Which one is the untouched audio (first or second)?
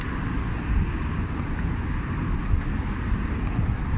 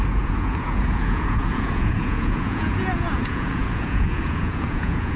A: first